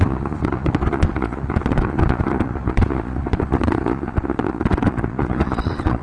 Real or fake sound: fake